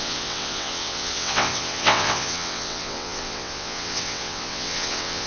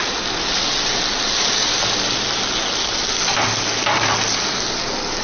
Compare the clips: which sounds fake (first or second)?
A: first